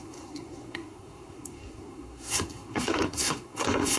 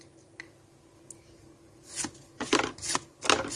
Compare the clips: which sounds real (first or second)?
second